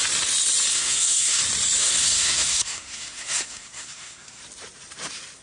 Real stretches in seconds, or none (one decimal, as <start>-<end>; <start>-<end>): 0.0-0.7; 1.4-1.8; 4.4-5.4

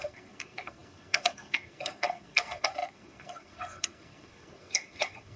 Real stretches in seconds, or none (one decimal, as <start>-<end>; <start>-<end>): none

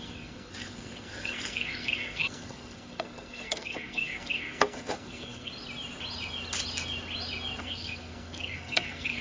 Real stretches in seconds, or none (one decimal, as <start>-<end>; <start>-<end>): 5.5-7.6

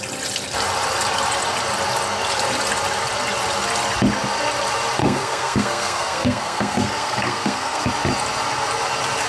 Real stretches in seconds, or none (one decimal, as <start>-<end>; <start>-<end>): 0.0-5.0; 7.9-9.3

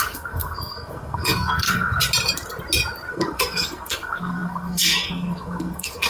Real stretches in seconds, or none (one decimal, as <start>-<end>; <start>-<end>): 2.0-3.1

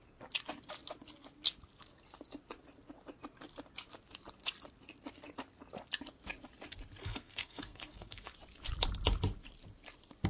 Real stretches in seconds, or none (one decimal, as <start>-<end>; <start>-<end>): 0.0-7.0; 8.3-10.3